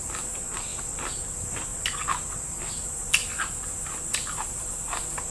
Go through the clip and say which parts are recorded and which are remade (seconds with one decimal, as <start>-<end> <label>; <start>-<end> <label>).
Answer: 0.0-1.7 remade; 1.7-2.5 recorded; 2.5-3.2 remade; 3.2-4.1 recorded; 4.1-5.3 remade